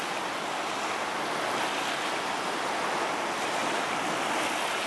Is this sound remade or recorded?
recorded